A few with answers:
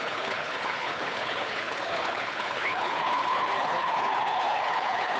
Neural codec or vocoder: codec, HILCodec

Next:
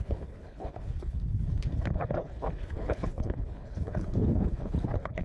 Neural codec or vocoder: codec, HILCodec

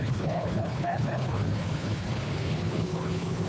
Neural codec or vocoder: codec, HILCodec